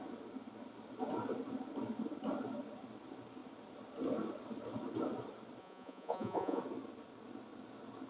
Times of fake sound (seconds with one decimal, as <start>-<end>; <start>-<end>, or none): 5.6-6.6